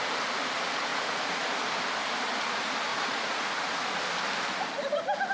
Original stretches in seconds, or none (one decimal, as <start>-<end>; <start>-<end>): 0.0-0.9; 1.4-2.9; 4.0-5.3